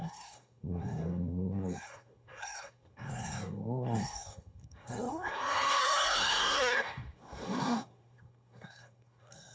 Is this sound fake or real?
fake